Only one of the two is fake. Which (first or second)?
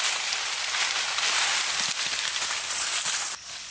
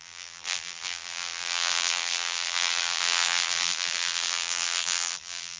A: second